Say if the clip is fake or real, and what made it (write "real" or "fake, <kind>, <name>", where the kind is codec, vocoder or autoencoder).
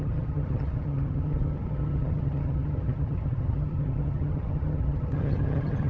fake, vocoder, HiFi-GAN